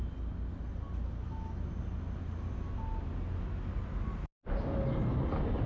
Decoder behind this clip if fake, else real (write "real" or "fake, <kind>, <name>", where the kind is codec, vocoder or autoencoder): real